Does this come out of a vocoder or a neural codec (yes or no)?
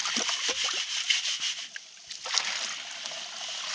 no